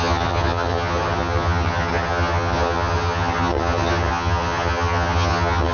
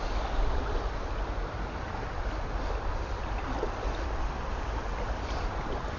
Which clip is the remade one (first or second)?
first